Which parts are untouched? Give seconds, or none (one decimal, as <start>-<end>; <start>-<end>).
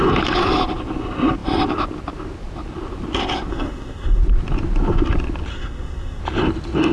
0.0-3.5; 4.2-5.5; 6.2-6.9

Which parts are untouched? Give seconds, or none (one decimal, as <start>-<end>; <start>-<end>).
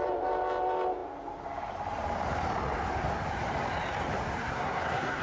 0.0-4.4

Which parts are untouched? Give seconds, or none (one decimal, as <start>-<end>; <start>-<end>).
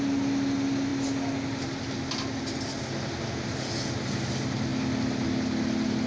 0.0-6.1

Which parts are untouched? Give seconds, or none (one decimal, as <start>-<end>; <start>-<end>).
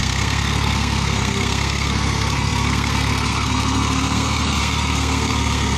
none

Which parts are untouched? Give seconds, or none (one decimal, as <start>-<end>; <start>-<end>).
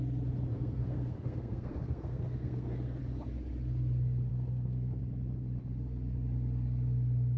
0.0-0.5; 3.0-4.3; 5.0-7.4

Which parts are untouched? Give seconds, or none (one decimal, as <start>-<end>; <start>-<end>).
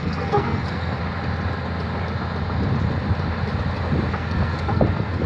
1.0-4.1